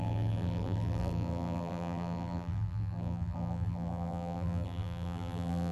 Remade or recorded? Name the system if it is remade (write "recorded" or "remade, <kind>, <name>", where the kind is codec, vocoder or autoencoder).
remade, vocoder, BigVGAN v2